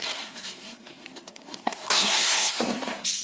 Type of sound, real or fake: fake